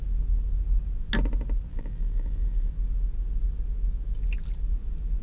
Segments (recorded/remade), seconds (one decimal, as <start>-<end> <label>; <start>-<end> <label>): 0.0-1.7 recorded; 1.7-2.7 remade; 2.7-5.2 recorded